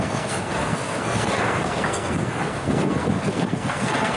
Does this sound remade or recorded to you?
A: remade